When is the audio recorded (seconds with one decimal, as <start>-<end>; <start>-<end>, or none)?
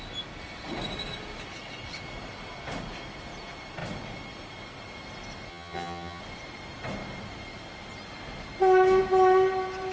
0.0-5.5; 6.2-9.9